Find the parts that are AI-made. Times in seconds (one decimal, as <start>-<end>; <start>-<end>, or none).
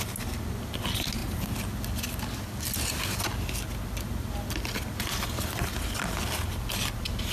none